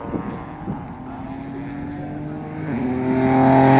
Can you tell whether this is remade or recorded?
recorded